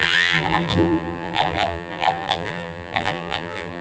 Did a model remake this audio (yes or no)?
yes